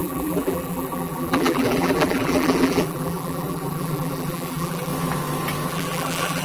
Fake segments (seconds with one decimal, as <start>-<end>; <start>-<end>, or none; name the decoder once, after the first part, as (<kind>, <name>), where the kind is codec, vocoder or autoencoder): 0.0-4.9 (vocoder, BigVGAN v2); 5.7-6.4

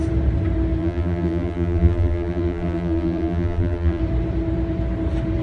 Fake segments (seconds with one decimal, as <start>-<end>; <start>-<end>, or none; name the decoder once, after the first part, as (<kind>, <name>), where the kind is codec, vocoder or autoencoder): 0.8-4.0 (vocoder, BigVGAN v2)